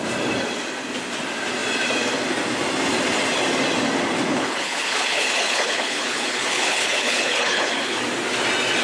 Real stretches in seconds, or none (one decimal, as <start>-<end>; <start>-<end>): 0.0-4.3; 8.0-8.8